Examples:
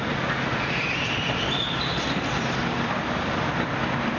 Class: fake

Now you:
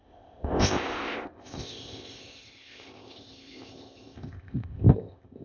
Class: fake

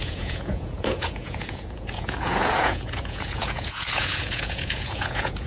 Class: fake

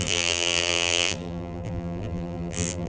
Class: fake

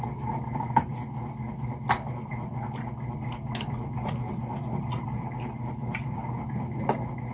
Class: real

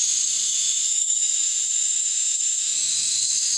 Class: fake